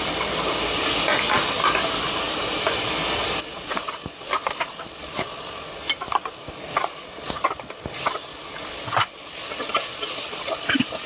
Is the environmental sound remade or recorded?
recorded